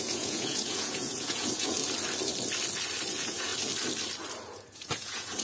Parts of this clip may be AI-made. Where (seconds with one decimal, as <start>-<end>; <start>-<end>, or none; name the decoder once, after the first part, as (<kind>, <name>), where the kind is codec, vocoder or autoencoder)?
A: 0.0-1.8 (vocoder, Vocos); 3.1-3.5; 4.4-5.4